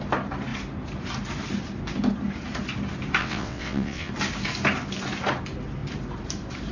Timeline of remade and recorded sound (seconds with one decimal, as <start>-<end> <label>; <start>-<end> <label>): 0.0-3.2 recorded; 3.2-4.1 remade; 4.1-6.7 recorded